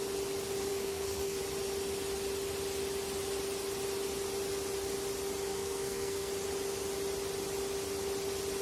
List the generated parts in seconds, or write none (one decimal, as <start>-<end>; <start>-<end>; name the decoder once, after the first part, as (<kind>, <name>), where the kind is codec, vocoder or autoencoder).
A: 0.7-1.4 (codec, SNAC); 5.5-6.3